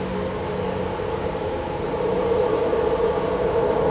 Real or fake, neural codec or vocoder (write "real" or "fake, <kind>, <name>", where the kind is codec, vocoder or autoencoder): real